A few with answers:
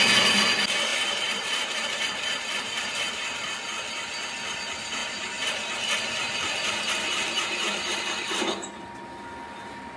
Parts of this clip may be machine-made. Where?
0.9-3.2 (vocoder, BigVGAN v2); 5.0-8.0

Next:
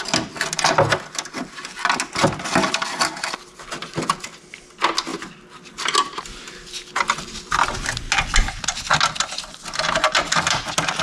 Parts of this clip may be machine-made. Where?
none

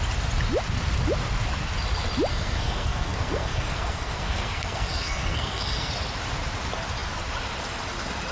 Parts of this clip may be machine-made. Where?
2.3-5.9 (codec, SNAC)

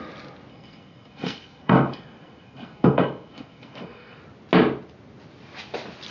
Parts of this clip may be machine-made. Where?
0.5-4.2 (codec, SNAC)

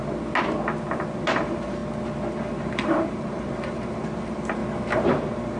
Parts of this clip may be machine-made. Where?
1.2-1.8 (vocoder, BigVGAN v2); 2.4-4.6; 5.1-5.6

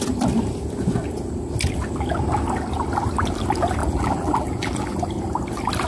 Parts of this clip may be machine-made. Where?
3.8-5.0 (vocoder, BigVGAN v2)